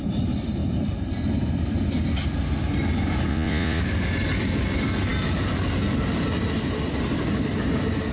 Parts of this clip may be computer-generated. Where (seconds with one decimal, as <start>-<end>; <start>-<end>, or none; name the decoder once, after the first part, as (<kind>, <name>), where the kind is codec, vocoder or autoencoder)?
3.3-3.8 (vocoder, Vocos)